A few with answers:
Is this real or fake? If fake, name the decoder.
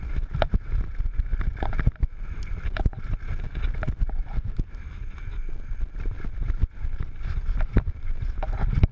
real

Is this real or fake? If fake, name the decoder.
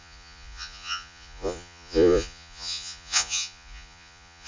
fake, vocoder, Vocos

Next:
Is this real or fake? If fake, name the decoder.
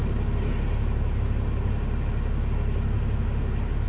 real